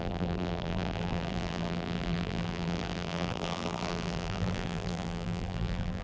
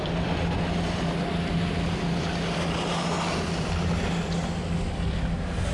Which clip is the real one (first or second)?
second